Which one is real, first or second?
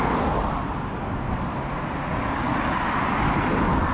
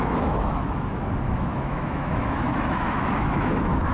first